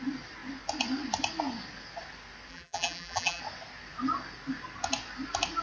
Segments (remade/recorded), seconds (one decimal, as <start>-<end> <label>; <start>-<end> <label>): 0.0-2.5 recorded; 2.5-3.4 remade; 3.4-5.6 recorded